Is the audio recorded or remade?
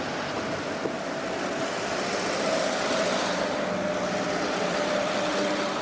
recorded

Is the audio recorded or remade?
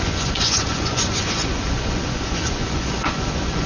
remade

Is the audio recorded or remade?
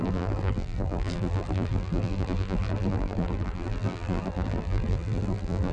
remade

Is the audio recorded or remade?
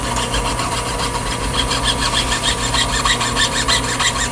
recorded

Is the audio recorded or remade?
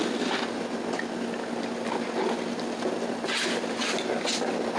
recorded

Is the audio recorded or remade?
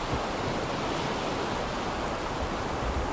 recorded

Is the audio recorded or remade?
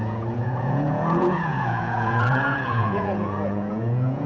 remade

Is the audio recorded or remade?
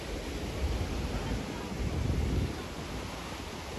recorded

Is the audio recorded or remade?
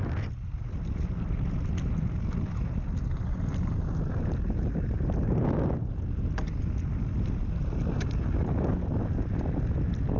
recorded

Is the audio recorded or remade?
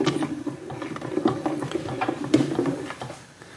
recorded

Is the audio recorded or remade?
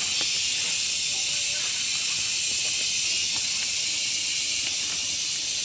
recorded